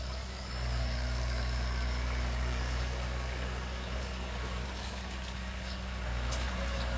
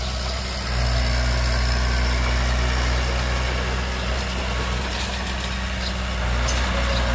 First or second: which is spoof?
first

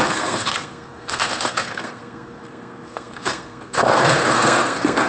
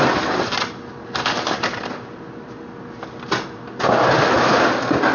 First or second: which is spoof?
first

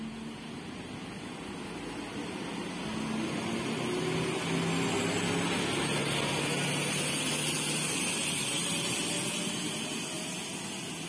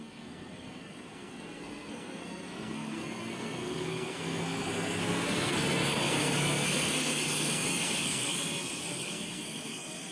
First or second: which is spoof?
second